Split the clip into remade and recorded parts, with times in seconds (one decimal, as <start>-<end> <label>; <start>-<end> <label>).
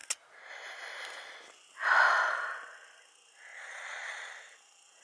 0.0-3.5 recorded; 3.5-4.3 remade; 4.3-5.0 recorded